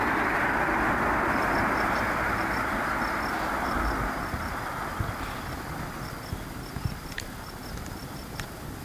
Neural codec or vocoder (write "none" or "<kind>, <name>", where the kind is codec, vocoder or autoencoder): none